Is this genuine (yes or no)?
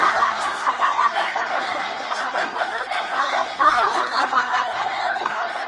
no